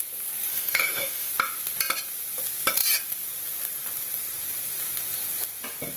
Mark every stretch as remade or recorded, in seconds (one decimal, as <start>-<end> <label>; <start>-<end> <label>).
0.0-0.5 recorded; 0.5-1.3 remade; 1.3-6.0 recorded